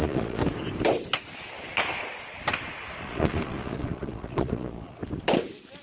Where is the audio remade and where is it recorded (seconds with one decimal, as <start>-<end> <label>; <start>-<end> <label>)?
0.0-0.4 remade; 0.4-3.0 recorded; 3.0-5.0 remade; 5.0-5.8 recorded